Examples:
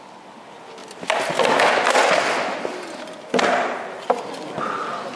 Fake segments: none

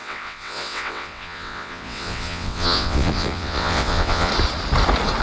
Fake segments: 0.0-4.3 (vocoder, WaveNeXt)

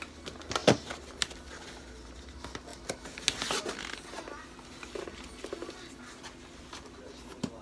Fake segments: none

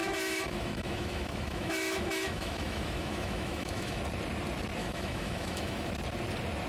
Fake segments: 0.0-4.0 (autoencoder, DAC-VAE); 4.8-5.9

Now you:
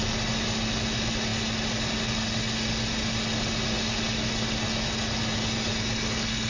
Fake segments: none

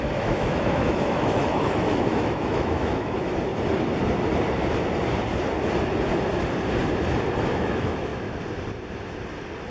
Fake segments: 0.0-3.5 (autoencoder, DAC-VAE); 7.4-8.1

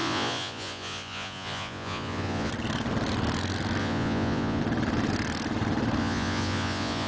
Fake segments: 0.0-2.5 (vocoder, Vocos); 3.8-4.6; 6.0-7.1

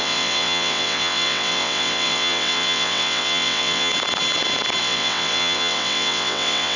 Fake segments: 0.0-3.9 (vocoder, WaveNeXt); 4.8-6.8